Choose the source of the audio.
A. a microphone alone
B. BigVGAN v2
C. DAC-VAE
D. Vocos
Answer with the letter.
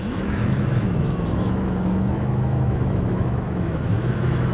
C